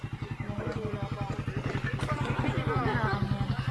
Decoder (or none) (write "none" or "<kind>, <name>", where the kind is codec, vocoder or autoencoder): none